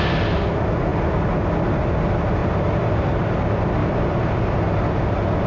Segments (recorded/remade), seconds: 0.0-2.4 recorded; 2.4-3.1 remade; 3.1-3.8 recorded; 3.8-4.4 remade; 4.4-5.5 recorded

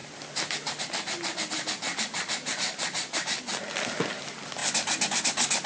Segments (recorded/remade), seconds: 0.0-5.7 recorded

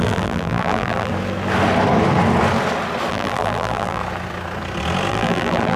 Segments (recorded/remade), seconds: 0.0-1.1 remade; 1.1-3.1 recorded; 3.1-4.0 remade; 4.0-5.1 recorded; 5.1-5.8 remade

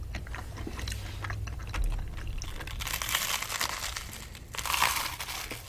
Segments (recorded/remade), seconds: 0.0-5.7 recorded